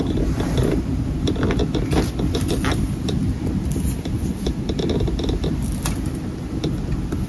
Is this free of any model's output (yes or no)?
yes